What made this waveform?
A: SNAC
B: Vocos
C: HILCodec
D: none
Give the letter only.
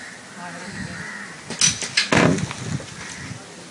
D